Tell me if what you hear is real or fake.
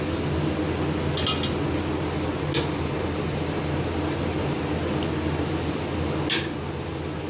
real